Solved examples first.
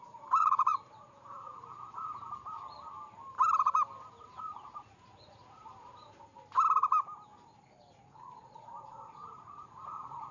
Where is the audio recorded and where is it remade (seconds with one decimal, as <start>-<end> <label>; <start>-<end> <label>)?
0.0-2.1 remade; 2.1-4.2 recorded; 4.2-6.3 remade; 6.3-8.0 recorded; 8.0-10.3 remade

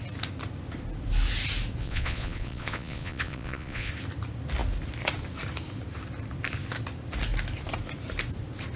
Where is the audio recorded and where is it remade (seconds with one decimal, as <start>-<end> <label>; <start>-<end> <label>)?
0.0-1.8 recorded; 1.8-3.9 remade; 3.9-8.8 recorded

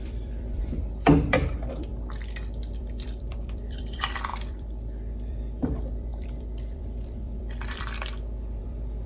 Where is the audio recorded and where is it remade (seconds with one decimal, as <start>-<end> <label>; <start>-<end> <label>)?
0.0-1.9 remade; 1.9-2.6 recorded; 2.6-9.1 remade

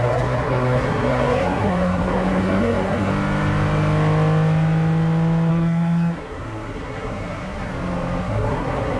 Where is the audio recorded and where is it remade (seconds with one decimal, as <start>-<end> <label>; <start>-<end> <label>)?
0.0-3.1 remade; 3.1-5.5 recorded; 5.5-7.7 remade; 7.7-8.2 recorded; 8.2-9.0 remade